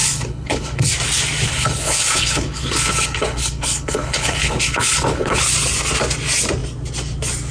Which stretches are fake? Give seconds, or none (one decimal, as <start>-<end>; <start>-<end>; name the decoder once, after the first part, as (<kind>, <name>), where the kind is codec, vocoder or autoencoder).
0.0-0.9 (codec, HILCodec); 1.5-5.4